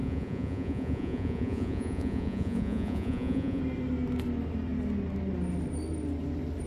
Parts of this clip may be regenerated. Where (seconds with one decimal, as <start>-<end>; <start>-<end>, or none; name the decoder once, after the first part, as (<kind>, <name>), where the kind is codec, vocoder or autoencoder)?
0.0-3.6 (vocoder, Vocos)